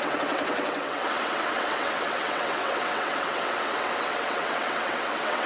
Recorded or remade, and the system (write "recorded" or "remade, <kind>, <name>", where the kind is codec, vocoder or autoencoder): remade, vocoder, WaveNeXt